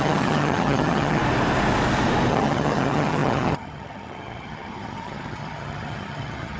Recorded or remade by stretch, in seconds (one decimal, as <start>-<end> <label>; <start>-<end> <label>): 0.0-1.2 remade; 1.2-2.3 recorded; 2.3-6.6 remade